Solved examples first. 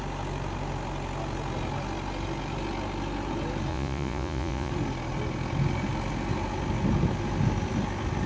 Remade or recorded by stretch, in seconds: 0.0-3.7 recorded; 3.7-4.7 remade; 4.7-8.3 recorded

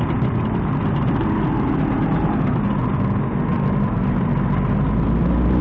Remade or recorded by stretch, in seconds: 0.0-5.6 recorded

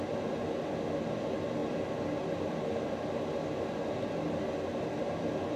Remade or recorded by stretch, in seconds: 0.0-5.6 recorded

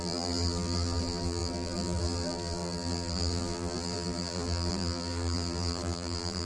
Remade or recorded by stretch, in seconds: 0.0-6.4 remade

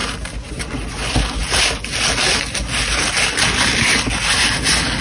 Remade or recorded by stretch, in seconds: 0.0-5.0 recorded